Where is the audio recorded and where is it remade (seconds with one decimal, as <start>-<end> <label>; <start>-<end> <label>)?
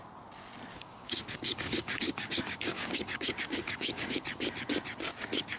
0.0-0.7 recorded; 0.7-4.1 remade; 4.1-5.6 recorded